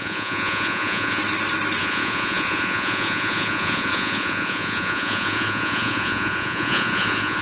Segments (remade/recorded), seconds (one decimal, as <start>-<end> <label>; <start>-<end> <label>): 0.0-1.2 remade; 1.2-1.8 recorded; 1.8-7.4 remade